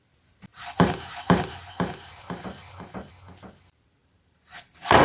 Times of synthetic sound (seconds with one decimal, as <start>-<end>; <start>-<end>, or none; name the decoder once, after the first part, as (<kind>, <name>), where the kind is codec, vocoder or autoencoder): 0.5-3.1 (vocoder, BigVGAN v2); 4.0-5.0